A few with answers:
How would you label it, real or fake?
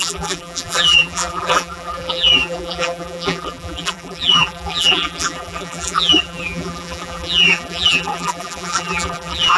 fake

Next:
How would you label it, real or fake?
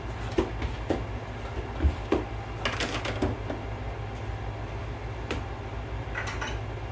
real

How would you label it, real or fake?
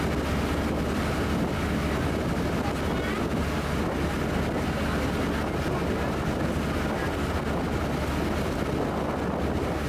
real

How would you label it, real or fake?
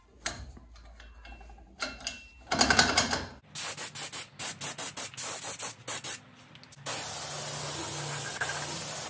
real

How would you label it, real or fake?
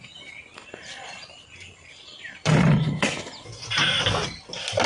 real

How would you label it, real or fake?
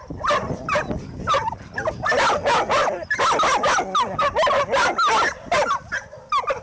real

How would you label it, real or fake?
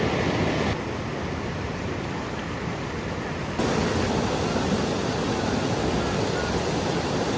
real